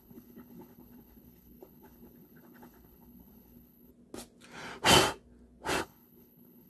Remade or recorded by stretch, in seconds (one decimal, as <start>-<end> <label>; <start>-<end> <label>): 0.0-3.9 remade; 3.9-5.8 recorded; 5.8-6.7 remade